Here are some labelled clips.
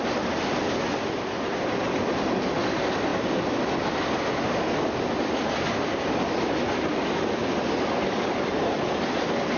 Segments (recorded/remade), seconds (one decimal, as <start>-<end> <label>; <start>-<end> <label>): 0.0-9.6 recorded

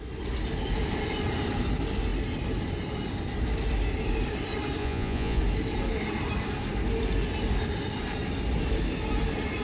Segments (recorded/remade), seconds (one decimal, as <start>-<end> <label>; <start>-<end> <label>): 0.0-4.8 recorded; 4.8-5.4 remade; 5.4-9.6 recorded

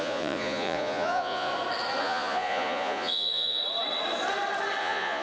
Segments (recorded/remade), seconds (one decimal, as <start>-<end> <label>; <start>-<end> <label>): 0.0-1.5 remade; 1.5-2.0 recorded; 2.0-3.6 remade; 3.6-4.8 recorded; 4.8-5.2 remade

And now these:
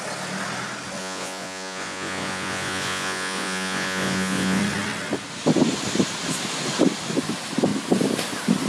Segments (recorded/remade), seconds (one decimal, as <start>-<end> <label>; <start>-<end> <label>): 0.0-1.0 recorded; 1.0-4.6 remade; 4.6-8.7 recorded

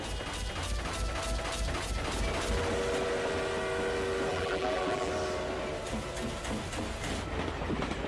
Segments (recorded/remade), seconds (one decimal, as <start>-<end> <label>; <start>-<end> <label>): 0.0-4.3 recorded; 4.3-5.1 remade; 5.1-8.1 recorded

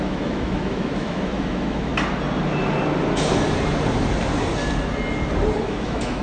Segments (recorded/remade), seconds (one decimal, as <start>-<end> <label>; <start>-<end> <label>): 0.0-1.9 remade; 1.9-5.6 recorded; 5.6-6.2 remade

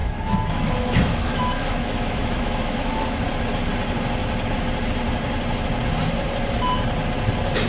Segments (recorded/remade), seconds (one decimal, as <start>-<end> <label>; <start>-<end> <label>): 0.0-3.3 remade; 3.3-7.7 recorded

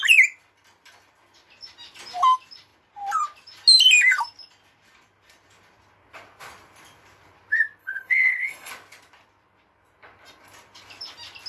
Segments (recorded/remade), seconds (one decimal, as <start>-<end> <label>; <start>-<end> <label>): 0.0-7.8 recorded; 7.8-8.7 remade; 8.7-11.5 recorded